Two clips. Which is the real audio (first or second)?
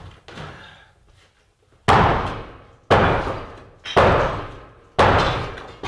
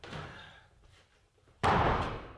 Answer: first